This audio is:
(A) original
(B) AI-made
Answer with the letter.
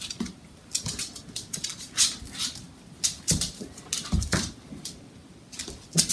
A